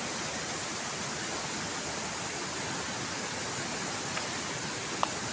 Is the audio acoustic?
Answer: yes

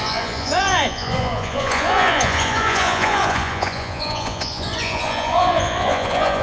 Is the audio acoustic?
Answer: no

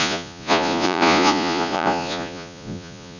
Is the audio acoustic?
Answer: no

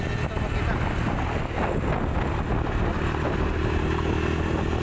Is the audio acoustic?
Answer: yes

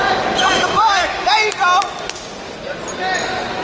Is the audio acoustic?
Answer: yes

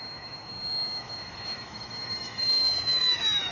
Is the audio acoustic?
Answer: no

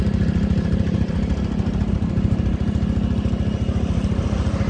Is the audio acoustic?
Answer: yes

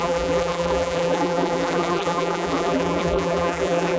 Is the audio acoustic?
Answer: no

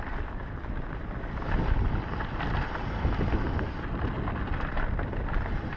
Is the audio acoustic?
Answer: yes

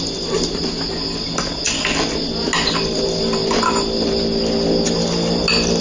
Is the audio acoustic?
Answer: yes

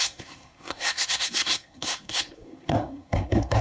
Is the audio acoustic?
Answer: no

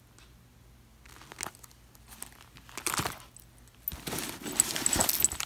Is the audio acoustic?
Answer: yes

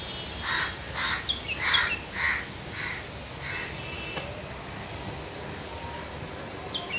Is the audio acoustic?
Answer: yes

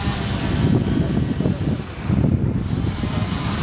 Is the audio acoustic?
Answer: yes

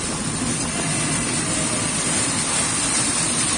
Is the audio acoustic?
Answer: no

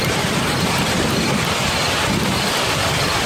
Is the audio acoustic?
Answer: yes